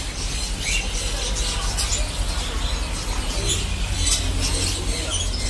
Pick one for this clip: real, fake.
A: real